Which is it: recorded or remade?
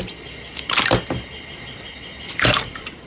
recorded